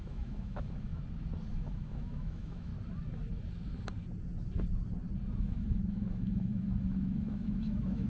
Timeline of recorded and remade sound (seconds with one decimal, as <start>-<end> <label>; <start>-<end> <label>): 0.0-0.9 remade; 0.9-1.5 recorded; 1.5-2.7 remade; 2.7-5.4 recorded; 5.4-8.1 remade